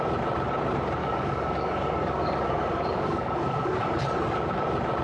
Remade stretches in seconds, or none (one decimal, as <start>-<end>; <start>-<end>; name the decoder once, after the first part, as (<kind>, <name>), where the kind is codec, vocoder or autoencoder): 1.0-4.0 (codec, DAC)